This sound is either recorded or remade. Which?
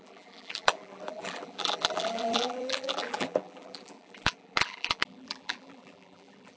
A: remade